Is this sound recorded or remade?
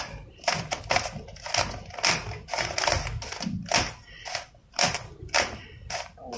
recorded